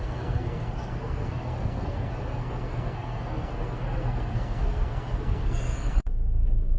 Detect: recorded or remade remade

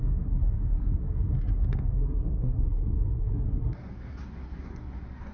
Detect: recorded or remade remade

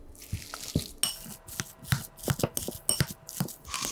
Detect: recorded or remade recorded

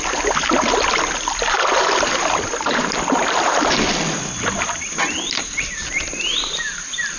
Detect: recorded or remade recorded